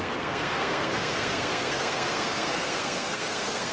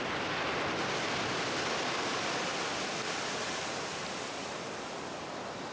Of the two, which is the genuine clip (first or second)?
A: second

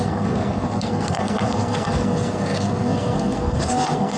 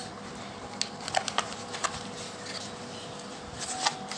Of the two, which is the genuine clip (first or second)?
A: second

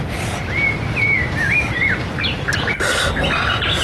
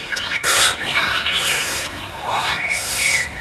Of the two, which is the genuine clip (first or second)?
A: first